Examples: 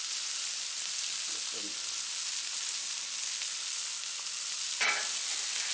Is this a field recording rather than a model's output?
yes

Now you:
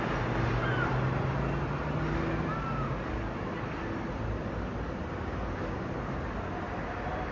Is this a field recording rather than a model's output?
yes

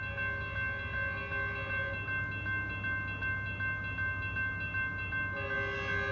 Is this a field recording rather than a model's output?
yes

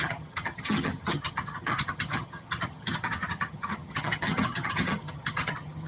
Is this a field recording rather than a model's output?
no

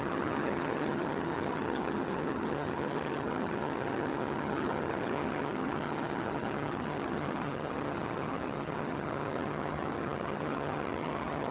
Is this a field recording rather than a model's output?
no